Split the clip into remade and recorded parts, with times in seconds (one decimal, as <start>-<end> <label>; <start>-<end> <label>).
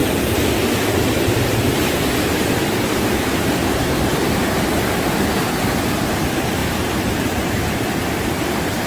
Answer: 0.0-8.9 remade